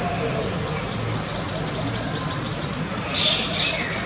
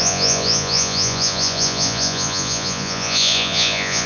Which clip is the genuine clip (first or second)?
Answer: first